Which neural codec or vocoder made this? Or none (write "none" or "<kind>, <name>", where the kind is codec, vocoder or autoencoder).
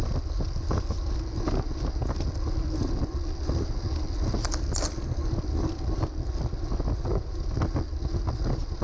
none